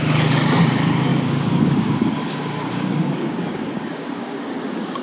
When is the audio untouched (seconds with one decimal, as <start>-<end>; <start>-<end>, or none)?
none